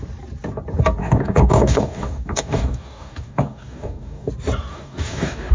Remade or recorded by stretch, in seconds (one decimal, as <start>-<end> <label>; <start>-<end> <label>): 0.0-1.0 recorded; 1.0-4.3 remade; 4.3-4.7 recorded; 4.7-5.5 remade